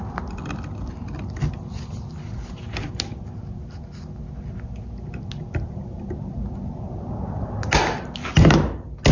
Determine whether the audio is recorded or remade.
recorded